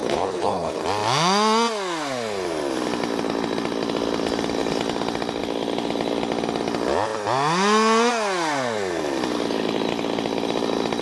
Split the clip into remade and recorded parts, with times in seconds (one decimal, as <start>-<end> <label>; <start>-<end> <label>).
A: 0.0-0.8 remade; 0.8-11.0 recorded